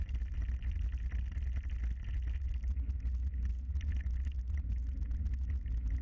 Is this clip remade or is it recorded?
recorded